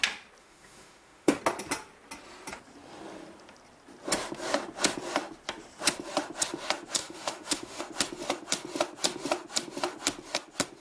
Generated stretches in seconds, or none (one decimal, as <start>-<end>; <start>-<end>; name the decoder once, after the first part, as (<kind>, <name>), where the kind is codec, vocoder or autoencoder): 0.4-1.4 (autoencoder, DAC-VAE); 7.0-7.8